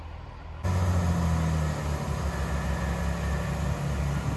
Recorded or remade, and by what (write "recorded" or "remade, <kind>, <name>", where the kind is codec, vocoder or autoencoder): recorded